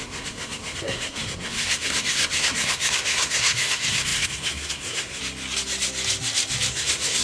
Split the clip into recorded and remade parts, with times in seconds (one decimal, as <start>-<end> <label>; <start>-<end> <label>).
0.0-5.2 remade; 5.2-6.7 recorded; 6.7-7.2 remade